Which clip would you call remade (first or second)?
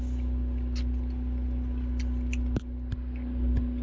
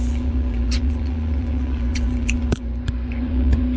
second